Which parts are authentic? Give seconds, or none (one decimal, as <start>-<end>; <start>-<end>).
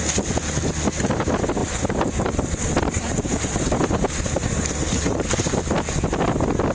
0.0-1.6; 5.6-6.7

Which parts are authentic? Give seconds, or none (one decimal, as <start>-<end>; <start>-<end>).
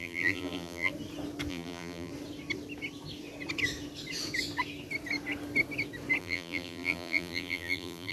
0.9-1.5; 2.1-6.2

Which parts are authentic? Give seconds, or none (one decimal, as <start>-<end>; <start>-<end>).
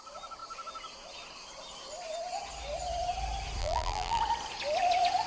0.0-3.6; 4.2-5.3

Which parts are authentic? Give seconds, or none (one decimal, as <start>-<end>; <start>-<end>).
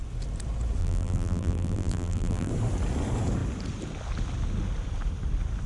0.0-0.8; 2.5-5.7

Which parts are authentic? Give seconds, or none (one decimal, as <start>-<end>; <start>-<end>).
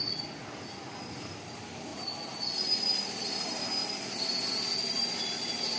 0.0-1.9; 2.4-5.8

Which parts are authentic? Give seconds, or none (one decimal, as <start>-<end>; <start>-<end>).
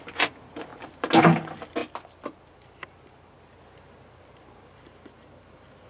0.7-1.2; 1.8-3.6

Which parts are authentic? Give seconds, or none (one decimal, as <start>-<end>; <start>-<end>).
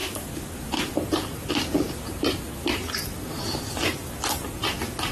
0.0-0.6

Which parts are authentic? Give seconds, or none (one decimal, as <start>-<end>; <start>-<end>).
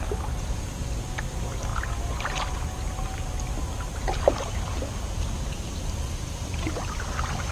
0.0-1.7; 3.4-4.7; 7.1-7.5